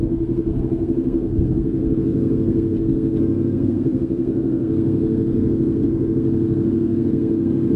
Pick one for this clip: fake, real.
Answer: fake